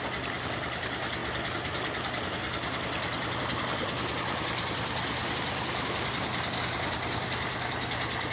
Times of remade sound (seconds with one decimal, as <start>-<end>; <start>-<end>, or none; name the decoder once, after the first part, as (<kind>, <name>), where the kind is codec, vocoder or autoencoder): none